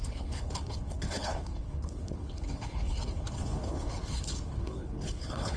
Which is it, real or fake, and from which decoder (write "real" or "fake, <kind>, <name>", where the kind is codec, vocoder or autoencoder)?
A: fake, codec, HILCodec